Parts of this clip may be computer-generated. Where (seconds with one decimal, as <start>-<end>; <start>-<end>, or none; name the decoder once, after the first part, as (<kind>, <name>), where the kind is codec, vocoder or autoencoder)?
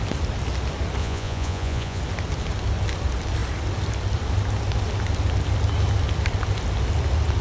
1.0-2.0 (vocoder, Vocos)